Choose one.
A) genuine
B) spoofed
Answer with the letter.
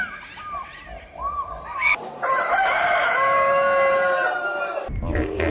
B